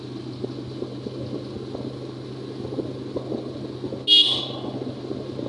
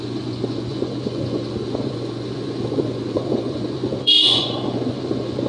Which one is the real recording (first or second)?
first